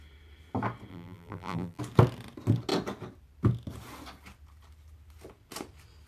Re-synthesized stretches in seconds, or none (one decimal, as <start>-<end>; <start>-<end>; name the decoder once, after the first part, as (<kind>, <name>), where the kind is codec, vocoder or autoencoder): 0.9-1.8 (vocoder, BigVGAN v2)